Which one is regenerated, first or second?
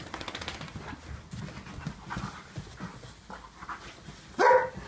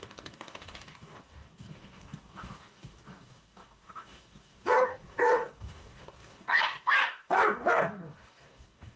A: second